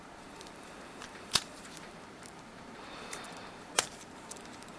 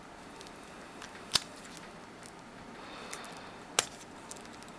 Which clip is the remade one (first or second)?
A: first